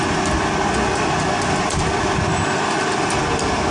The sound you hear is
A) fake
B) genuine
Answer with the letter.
B